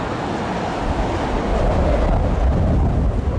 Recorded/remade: recorded